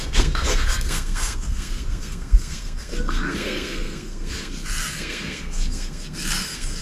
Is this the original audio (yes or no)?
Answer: no